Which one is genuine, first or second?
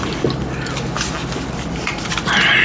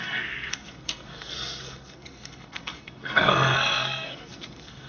first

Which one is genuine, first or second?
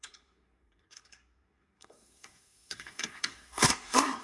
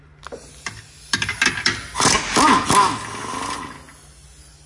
second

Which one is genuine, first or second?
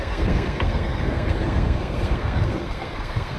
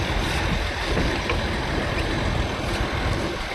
second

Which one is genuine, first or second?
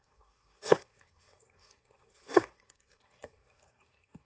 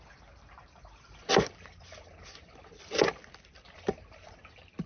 second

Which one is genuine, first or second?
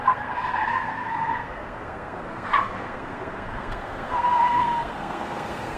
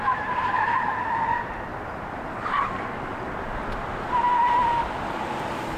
second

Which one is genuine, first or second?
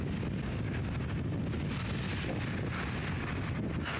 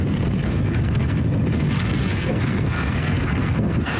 first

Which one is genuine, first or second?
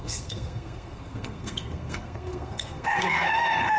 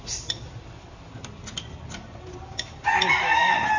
second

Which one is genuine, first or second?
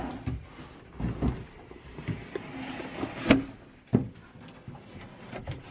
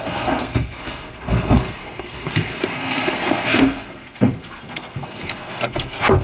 first